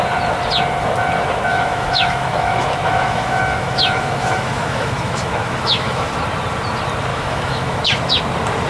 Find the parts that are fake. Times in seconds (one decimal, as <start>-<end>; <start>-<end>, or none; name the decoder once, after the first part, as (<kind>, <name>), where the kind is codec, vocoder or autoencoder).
1.5-6.1 (autoencoder, DAC-VAE); 7.1-8.2